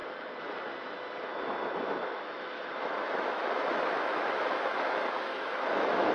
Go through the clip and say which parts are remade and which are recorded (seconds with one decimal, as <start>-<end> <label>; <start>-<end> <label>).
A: 0.0-2.0 recorded; 2.0-6.1 remade